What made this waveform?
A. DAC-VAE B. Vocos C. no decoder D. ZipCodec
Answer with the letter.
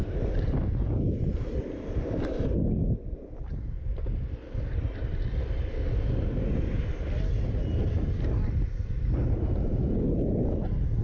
C